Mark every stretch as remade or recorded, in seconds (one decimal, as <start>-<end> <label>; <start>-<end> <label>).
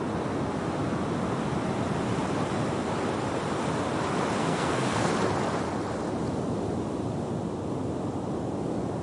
0.0-4.4 recorded; 4.4-5.1 remade; 5.1-9.0 recorded